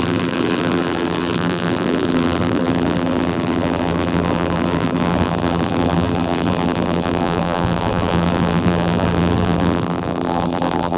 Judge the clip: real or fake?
fake